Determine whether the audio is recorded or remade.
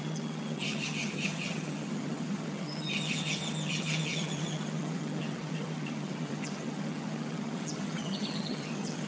remade